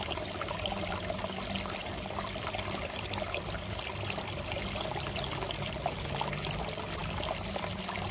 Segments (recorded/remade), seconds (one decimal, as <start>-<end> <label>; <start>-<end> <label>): 0.0-8.1 recorded